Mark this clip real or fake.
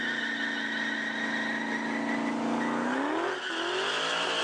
real